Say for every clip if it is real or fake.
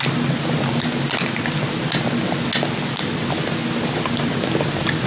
real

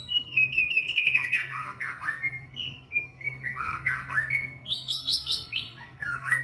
fake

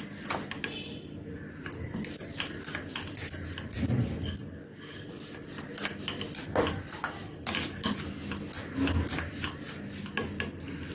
real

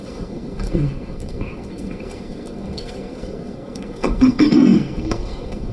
fake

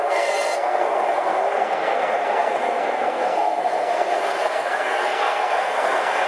fake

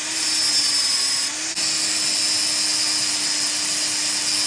real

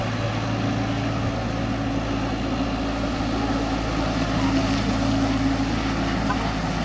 real